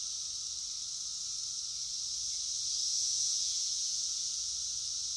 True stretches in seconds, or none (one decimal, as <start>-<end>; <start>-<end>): 0.0-2.9; 4.5-5.2